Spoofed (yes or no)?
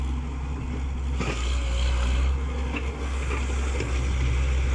no